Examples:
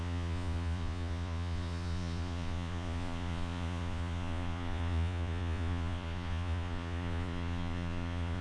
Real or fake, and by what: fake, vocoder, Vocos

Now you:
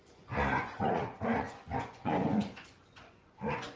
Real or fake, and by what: fake, vocoder, Vocos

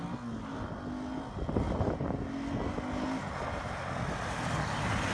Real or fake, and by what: real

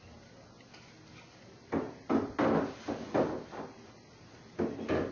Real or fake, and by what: real